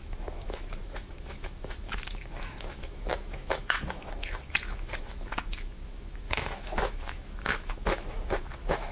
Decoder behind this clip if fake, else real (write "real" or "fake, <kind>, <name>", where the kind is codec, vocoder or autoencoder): fake, autoencoder, DAC-VAE